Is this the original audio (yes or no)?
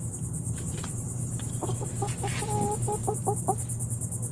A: yes